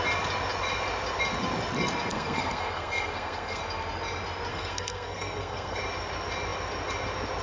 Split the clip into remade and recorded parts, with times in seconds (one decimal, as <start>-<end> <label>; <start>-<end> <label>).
0.0-2.1 recorded; 2.1-3.6 remade; 3.6-4.5 recorded; 4.5-5.8 remade; 5.8-7.4 recorded